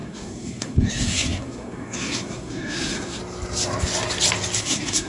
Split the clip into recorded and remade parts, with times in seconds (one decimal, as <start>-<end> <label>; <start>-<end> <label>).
0.0-3.2 remade; 3.2-4.6 recorded; 4.6-5.1 remade